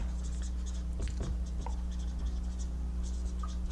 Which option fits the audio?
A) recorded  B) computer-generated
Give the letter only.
A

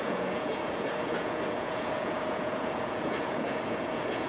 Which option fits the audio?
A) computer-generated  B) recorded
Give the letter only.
A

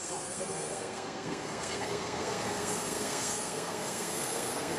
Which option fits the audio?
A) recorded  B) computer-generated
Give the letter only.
B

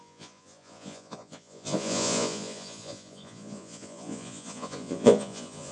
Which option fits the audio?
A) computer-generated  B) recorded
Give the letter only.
A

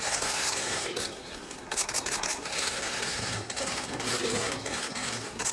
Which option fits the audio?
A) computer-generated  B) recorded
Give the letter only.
A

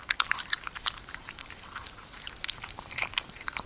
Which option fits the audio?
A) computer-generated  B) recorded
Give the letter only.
A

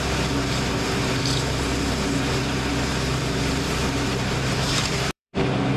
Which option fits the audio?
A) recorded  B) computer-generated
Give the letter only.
B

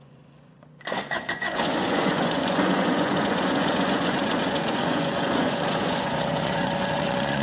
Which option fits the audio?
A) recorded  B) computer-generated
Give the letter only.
B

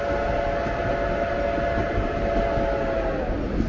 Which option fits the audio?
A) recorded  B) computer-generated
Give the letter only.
A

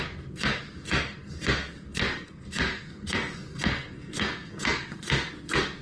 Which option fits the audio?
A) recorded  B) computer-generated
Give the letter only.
B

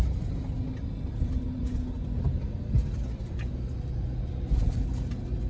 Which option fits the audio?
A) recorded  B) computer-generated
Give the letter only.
A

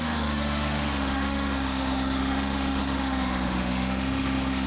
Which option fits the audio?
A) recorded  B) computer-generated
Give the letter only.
B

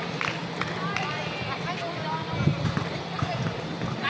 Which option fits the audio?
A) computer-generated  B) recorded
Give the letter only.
B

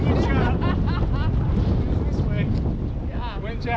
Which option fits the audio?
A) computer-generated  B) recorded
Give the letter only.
B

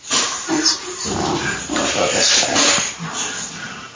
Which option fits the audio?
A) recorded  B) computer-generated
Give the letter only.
A